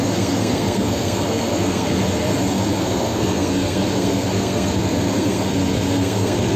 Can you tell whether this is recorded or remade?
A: remade